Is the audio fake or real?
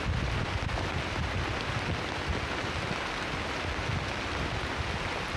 real